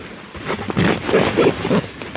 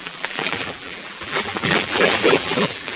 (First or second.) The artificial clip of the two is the second